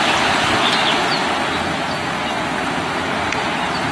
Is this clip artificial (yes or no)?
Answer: no